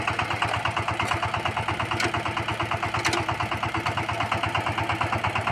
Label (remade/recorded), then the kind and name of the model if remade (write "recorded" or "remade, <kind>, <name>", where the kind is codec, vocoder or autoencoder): recorded